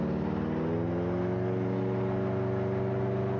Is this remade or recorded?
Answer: recorded